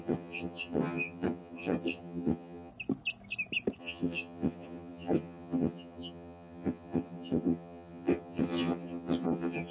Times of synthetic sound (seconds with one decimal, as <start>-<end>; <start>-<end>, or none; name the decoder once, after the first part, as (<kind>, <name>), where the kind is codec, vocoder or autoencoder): 0.0-2.7 (vocoder, HiFi-GAN); 3.8-9.7